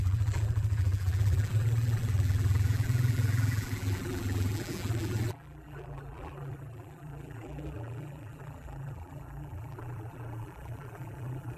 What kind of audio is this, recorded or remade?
remade